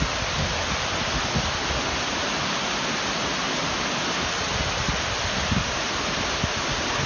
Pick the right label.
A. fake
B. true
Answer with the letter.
B